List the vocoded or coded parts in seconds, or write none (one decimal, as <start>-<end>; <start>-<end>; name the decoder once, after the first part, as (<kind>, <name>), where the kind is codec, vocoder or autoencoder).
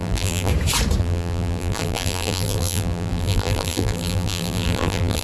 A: 0.0-0.5 (vocoder, BigVGAN v2); 1.0-5.2